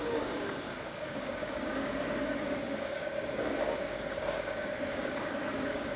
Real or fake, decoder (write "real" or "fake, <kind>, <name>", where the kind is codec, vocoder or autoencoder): fake, codec, DAC